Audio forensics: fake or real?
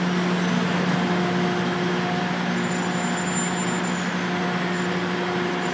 real